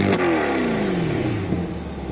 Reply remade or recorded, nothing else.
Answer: recorded